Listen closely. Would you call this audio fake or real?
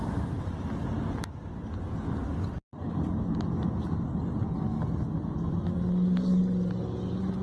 real